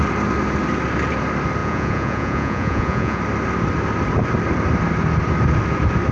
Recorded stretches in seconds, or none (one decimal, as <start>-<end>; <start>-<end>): 0.0-1.6; 3.2-6.1